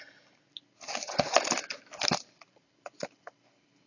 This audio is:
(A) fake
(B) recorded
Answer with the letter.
B